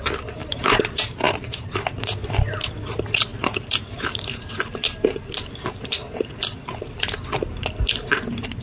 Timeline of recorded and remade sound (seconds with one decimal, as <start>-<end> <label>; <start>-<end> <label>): 0.0-0.4 recorded; 0.4-2.0 remade; 2.0-3.3 recorded; 3.3-6.3 remade; 6.3-8.6 recorded